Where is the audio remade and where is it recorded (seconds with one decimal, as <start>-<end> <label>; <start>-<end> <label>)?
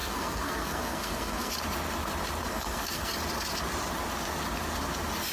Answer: 0.0-1.5 remade; 1.5-2.5 recorded; 2.5-3.1 remade; 3.1-5.3 recorded